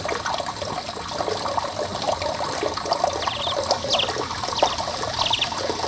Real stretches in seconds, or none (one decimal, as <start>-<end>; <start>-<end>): 0.0-5.9